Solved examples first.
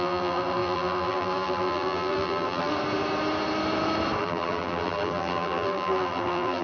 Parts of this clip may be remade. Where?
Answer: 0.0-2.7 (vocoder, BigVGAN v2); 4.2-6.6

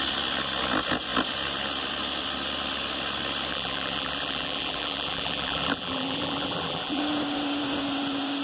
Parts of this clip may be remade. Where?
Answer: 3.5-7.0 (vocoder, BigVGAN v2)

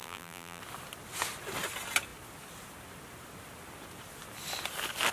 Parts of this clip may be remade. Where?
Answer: 0.0-0.6 (vocoder, BigVGAN v2)

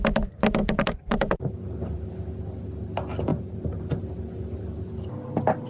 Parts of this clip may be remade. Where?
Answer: 0.6-2.1 (vocoder, BigVGAN v2); 3.3-3.9

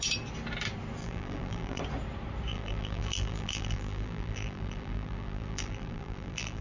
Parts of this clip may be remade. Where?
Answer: 1.0-1.8 (vocoder, BigVGAN v2); 2.5-6.6